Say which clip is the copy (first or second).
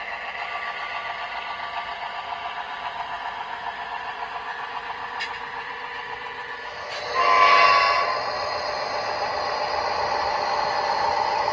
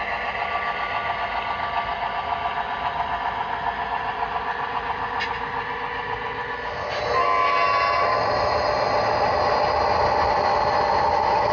first